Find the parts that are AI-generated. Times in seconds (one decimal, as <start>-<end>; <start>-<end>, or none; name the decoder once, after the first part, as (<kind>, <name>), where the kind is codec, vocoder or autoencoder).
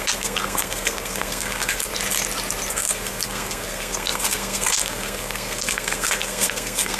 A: 0.0-1.9 (codec, SNAC); 2.7-7.0